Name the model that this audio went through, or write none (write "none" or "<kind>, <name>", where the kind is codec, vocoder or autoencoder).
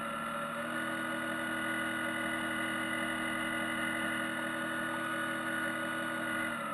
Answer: none